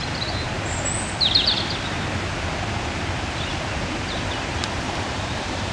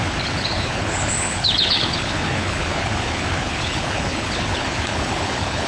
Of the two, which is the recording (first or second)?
first